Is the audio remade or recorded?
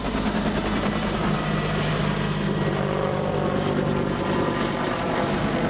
recorded